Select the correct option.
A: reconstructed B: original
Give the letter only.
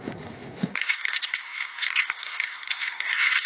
A